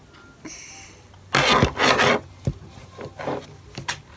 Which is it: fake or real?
real